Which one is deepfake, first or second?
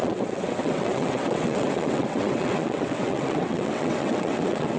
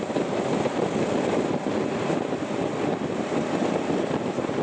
first